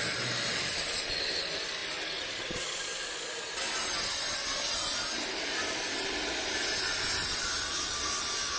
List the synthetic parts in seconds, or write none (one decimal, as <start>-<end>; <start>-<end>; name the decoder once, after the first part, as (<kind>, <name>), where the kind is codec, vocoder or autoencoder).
none